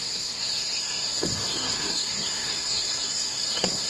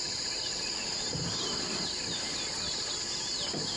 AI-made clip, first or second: first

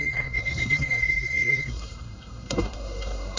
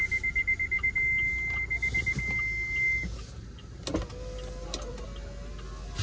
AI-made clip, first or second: first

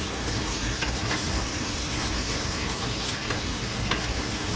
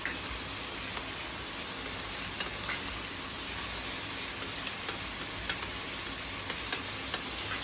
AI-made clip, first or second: first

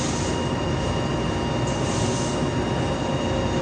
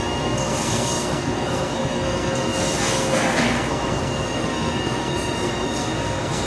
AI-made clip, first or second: second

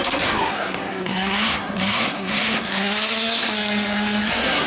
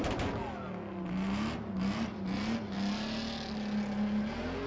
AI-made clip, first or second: first